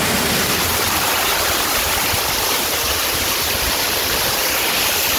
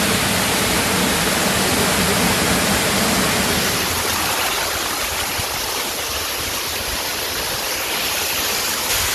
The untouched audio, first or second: second